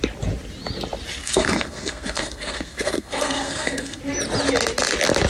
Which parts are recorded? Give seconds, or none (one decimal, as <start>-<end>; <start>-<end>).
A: 0.0-1.2; 4.0-5.3

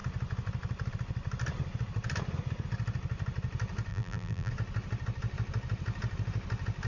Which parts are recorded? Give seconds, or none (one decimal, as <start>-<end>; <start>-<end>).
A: 0.0-3.9; 4.5-6.9

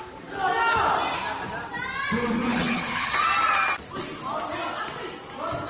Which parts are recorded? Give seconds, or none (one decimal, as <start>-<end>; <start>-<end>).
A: 0.0-2.5; 3.1-5.7

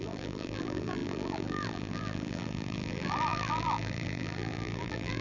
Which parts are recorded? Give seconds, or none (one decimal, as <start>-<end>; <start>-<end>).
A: none

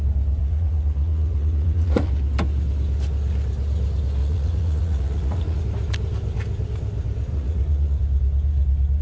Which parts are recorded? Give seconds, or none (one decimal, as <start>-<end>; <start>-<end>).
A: 0.0-0.4; 2.1-4.2; 5.6-7.3; 8.0-9.0

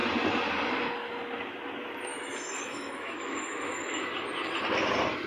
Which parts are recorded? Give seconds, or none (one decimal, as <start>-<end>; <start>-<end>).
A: 0.0-2.1; 4.0-5.3

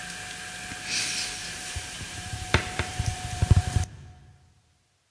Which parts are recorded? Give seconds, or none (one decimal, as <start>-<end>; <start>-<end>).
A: 0.0-1.4; 3.8-5.1